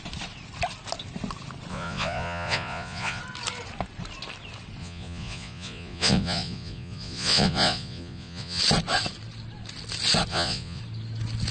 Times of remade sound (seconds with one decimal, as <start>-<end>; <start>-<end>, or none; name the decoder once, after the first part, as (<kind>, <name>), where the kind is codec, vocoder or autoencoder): 1.7-3.2 (vocoder, Vocos); 4.8-8.6; 10.3-10.8